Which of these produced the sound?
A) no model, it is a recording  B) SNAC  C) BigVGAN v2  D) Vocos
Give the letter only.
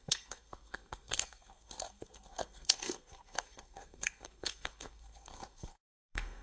B